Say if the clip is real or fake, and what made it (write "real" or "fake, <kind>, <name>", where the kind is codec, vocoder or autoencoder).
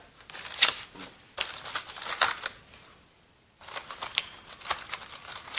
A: real